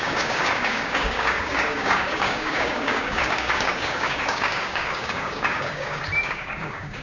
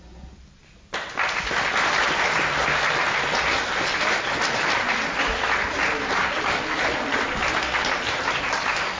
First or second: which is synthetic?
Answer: first